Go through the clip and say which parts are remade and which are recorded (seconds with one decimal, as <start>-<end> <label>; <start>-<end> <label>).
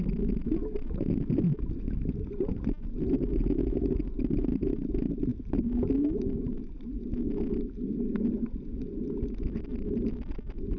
0.0-10.8 recorded